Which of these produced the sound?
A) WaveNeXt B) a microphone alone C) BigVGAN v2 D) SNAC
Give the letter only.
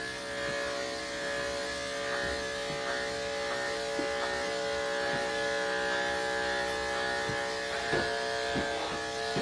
B